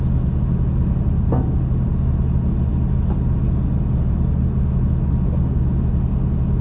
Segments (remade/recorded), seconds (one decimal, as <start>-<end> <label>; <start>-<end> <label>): 0.0-6.6 recorded

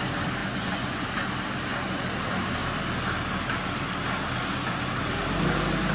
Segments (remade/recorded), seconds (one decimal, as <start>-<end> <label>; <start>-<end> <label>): 0.0-0.4 recorded; 0.4-1.1 remade; 1.1-5.9 recorded

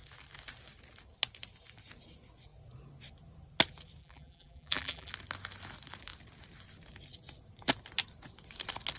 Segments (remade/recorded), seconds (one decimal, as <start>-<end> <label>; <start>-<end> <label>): 0.0-4.0 recorded; 4.0-5.1 remade; 5.1-9.0 recorded

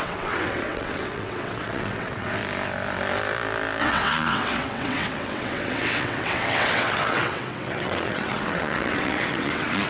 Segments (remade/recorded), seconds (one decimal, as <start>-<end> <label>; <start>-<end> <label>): 0.0-2.4 remade; 2.4-3.8 recorded; 3.8-9.9 remade

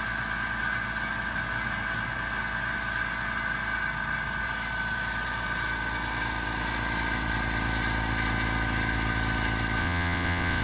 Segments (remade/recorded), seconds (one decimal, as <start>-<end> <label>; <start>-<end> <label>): 0.0-9.8 recorded; 9.8-10.6 remade

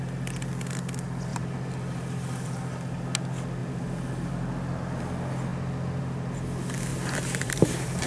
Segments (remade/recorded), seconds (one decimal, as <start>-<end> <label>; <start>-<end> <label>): 0.0-1.3 recorded; 1.3-3.0 remade; 3.0-3.6 recorded; 3.6-4.3 remade; 4.3-6.9 recorded; 6.9-8.1 remade